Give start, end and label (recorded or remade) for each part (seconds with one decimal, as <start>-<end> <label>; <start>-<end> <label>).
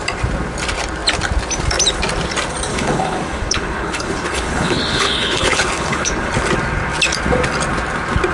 0.0-2.7 recorded; 2.7-6.3 remade; 6.3-8.3 recorded